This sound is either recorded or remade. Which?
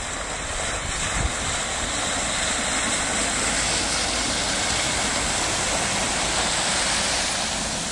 recorded